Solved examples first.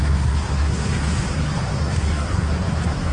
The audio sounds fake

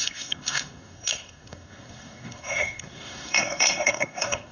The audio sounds fake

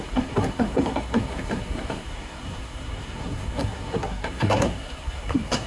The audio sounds fake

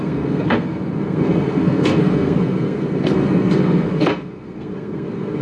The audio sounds fake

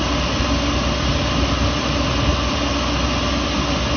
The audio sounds real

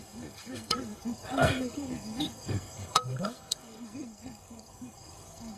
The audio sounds fake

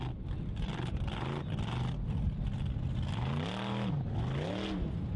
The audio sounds real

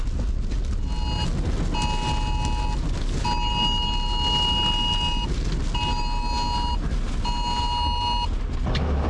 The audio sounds real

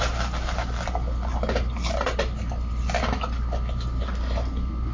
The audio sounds real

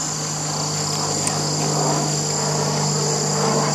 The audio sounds real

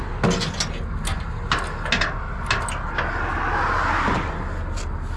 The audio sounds real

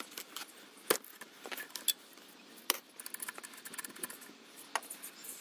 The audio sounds real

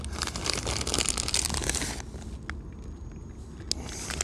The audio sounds real